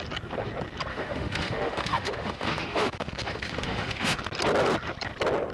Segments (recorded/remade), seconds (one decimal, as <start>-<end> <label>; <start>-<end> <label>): 0.0-0.9 recorded; 0.9-4.2 remade; 4.2-5.5 recorded